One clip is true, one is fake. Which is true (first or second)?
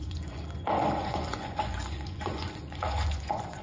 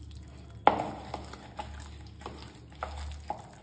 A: second